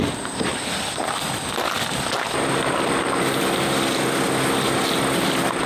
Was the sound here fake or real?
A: real